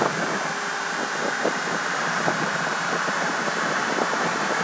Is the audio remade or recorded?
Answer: remade